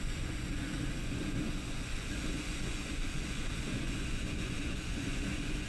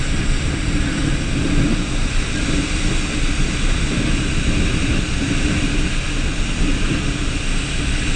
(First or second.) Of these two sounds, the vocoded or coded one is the first